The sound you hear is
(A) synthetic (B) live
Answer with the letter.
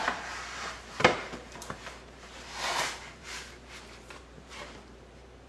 A